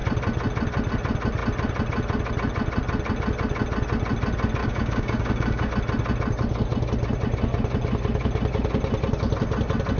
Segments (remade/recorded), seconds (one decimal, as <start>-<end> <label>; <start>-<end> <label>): 0.0-4.6 recorded; 4.6-5.7 remade; 5.7-10.0 recorded